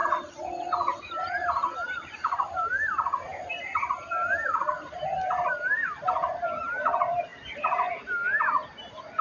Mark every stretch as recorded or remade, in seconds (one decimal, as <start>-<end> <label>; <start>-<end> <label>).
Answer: 0.0-2.6 remade; 2.6-7.3 recorded; 7.3-7.9 remade; 7.9-9.2 recorded